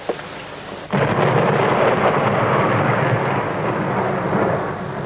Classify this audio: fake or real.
real